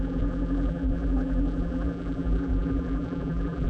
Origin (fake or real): fake